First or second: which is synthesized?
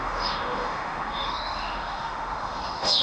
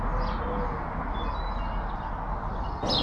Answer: first